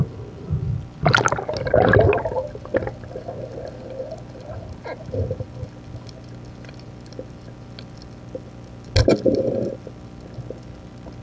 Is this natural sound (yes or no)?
yes